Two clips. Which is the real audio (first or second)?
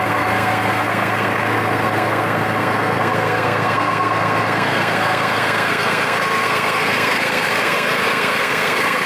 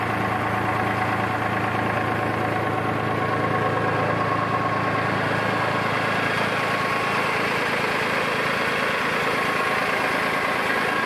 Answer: second